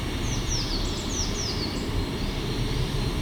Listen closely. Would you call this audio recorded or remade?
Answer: remade